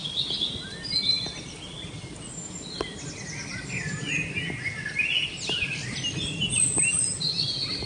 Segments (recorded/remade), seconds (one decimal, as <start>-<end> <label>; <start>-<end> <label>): 0.0-7.9 recorded